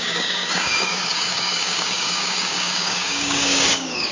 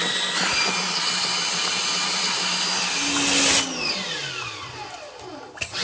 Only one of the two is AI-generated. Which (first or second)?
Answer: first